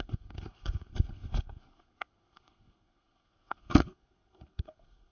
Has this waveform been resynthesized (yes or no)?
yes